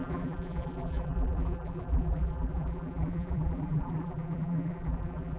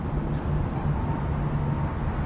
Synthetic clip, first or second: first